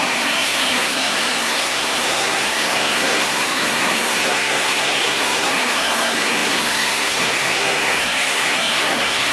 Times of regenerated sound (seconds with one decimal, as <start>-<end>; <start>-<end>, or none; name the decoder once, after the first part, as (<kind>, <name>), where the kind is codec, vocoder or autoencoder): 0.0-9.3 (codec, SNAC)